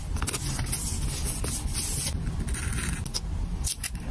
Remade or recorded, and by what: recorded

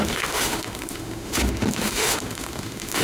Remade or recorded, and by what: remade, autoencoder, DAC-VAE